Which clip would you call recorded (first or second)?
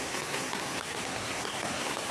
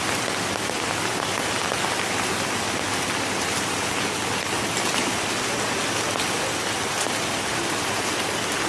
second